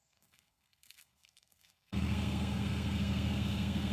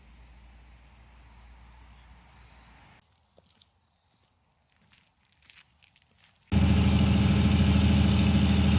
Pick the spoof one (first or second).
first